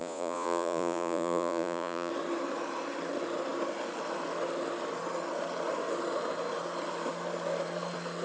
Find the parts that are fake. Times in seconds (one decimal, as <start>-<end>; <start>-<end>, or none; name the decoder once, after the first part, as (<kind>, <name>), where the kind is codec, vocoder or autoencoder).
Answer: 0.0-2.1 (vocoder, Vocos)